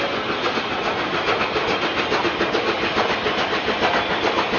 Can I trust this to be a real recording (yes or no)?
yes